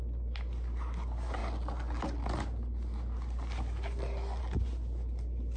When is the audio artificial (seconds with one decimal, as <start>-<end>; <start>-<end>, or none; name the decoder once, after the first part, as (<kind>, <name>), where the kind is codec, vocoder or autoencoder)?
none